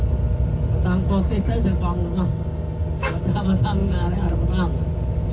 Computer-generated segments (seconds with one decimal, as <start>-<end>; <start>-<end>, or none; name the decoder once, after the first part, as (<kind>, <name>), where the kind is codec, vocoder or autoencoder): 2.0-3.2 (codec, DAC)